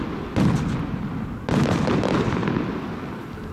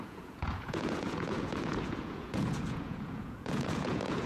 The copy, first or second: second